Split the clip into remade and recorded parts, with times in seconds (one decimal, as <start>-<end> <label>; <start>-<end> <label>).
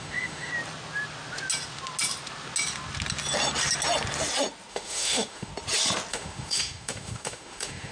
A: 0.0-0.5 remade; 0.5-4.7 recorded; 4.7-5.5 remade; 5.5-6.1 recorded; 6.1-7.9 remade